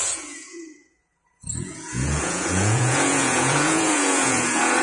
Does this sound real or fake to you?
fake